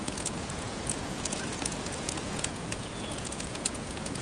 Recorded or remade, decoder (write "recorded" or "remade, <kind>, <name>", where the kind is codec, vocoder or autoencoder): remade, vocoder, Vocos